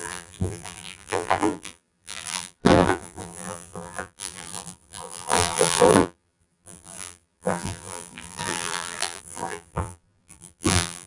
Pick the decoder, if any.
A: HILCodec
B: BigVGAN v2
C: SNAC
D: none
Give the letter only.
B